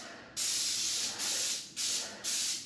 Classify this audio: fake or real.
real